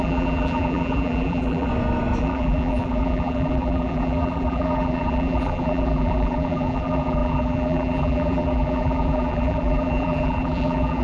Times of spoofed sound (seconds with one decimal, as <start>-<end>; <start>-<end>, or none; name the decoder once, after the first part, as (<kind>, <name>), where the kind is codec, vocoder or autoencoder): 0.0-1.7 (vocoder, BigVGAN v2); 2.2-11.0